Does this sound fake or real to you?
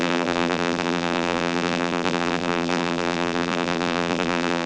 fake